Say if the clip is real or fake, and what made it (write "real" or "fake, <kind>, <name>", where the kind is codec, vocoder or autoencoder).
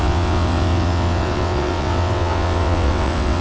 fake, vocoder, WaveNeXt